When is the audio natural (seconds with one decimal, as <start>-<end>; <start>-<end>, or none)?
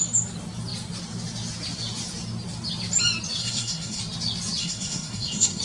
0.0-3.4; 4.0-4.6